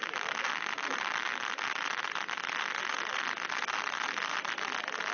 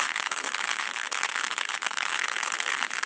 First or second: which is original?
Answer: first